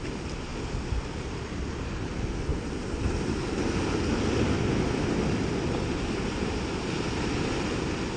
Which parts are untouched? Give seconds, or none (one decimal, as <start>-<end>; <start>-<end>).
0.0-8.2